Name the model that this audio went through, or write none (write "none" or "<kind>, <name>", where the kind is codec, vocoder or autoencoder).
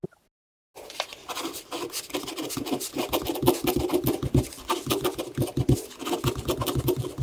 none